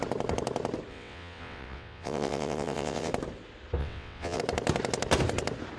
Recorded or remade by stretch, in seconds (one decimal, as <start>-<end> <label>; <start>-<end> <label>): 0.0-0.9 recorded; 0.9-3.1 remade; 3.1-3.8 recorded; 3.8-4.4 remade; 4.4-5.8 recorded